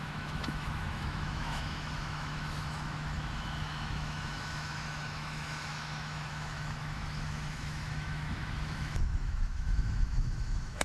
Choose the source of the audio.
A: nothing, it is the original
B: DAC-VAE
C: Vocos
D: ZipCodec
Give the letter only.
B